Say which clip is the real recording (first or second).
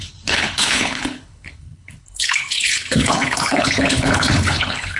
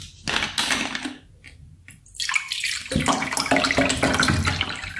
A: second